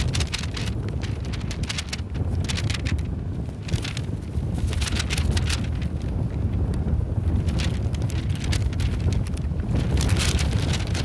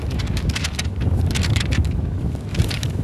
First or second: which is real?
first